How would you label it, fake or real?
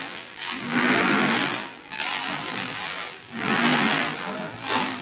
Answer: fake